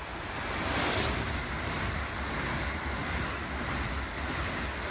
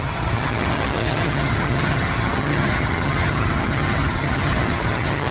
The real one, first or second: first